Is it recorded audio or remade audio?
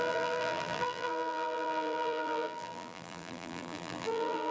remade